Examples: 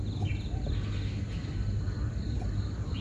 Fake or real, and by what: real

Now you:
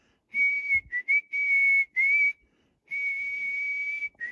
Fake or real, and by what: real